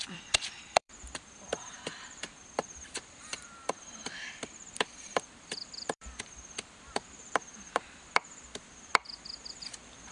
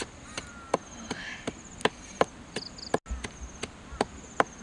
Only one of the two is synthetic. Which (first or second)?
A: first